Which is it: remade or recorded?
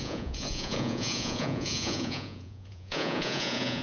remade